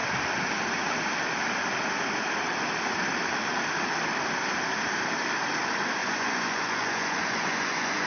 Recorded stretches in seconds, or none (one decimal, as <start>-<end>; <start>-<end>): 0.0-6.0